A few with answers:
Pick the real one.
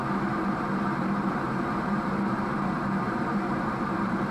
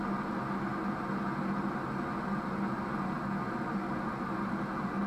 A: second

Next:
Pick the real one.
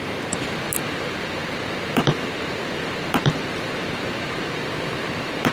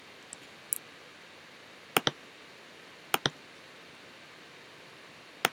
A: second